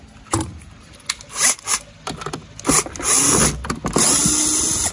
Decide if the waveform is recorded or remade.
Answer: recorded